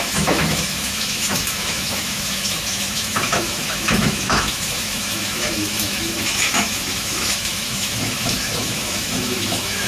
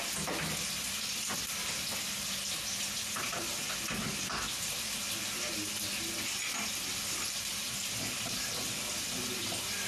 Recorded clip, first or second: second